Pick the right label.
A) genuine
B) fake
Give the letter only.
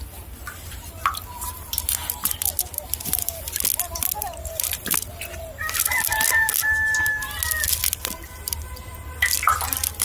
A